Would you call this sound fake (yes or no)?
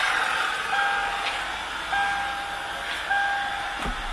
no